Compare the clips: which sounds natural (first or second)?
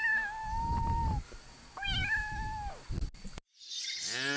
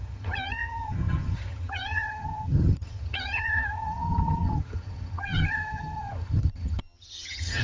first